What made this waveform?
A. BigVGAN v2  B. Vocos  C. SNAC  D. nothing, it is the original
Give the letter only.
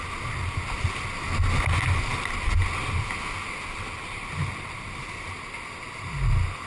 D